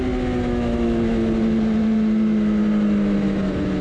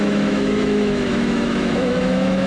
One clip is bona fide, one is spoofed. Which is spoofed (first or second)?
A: second